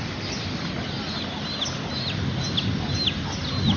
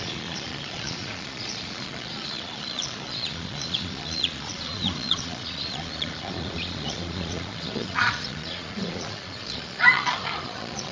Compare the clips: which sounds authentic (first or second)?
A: first